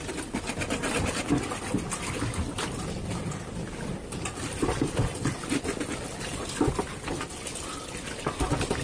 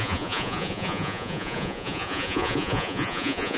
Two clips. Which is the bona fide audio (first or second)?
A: first